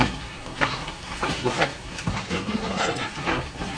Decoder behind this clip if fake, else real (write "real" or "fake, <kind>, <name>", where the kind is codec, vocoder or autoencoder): fake, codec, SNAC